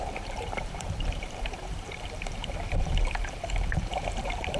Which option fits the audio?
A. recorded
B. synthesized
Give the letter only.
B